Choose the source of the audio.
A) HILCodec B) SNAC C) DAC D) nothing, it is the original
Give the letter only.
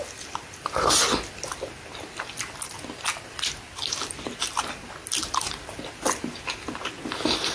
D